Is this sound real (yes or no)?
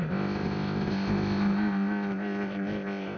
no